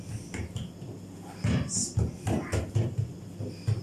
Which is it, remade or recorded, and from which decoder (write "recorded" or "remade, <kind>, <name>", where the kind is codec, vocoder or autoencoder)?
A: recorded